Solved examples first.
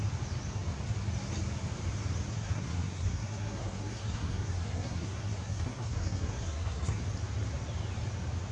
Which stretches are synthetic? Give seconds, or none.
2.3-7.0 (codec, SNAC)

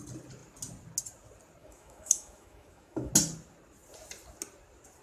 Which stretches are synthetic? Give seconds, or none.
1.6-3.1 (autoencoder, DAC-VAE)

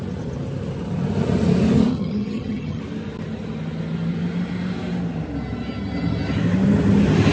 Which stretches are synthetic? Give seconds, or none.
1.9-2.8 (vocoder, HiFi-GAN)

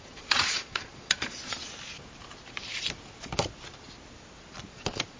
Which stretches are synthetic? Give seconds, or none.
0.0-1.6 (vocoder, Vocos); 4.7-5.2

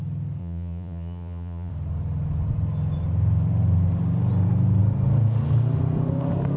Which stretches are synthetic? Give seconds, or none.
0.4-1.7 (vocoder, Vocos)

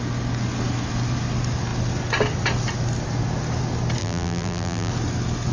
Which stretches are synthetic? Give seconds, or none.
4.0-4.9 (vocoder, BigVGAN v2)